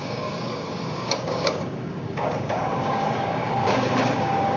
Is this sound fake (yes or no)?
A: yes